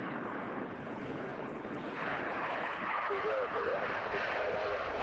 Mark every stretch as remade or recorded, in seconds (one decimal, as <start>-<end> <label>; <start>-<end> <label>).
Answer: 0.0-3.7 remade; 3.7-5.0 recorded